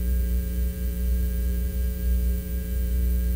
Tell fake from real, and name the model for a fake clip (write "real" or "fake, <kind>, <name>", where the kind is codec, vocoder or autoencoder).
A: fake, vocoder, BigVGAN v2